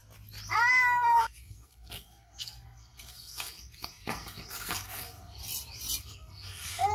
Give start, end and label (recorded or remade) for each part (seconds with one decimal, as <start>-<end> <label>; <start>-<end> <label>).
0.0-0.7 recorded; 0.7-5.4 remade; 5.4-6.0 recorded; 6.0-6.9 remade